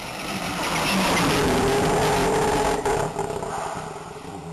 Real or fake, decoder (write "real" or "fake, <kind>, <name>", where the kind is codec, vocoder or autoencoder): real